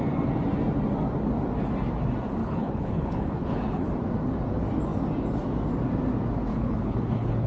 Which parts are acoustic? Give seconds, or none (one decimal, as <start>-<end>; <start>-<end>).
0.0-2.4; 3.9-6.5